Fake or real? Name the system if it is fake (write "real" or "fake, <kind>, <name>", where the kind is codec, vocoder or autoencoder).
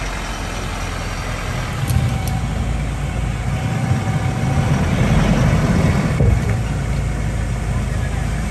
real